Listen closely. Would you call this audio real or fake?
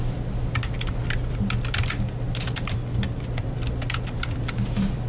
real